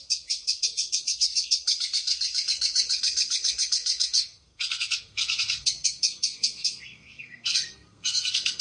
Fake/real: fake